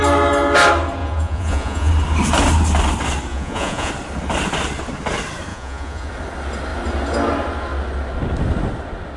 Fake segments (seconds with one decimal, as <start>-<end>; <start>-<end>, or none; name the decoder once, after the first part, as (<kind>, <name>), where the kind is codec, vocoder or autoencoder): 1.0-1.9 (vocoder, Vocos); 3.3-3.9; 5.5-6.1